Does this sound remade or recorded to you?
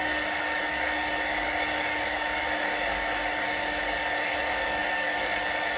remade